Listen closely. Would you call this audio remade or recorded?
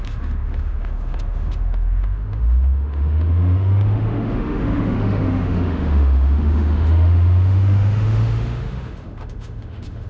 remade